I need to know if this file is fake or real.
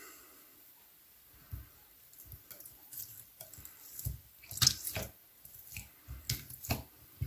real